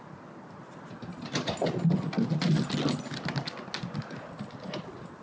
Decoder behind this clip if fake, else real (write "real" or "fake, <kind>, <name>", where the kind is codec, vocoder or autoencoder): real